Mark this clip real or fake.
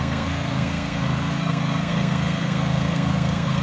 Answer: fake